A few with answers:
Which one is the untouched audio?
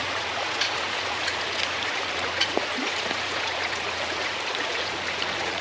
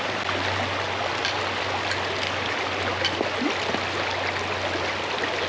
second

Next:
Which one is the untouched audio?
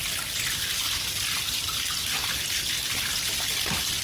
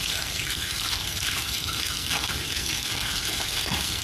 first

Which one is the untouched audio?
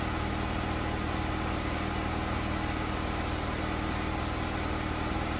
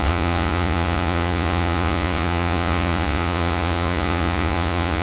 first